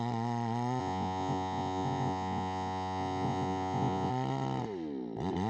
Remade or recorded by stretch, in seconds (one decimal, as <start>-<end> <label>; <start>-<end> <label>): 0.0-0.8 recorded; 0.8-4.1 remade; 4.1-5.5 recorded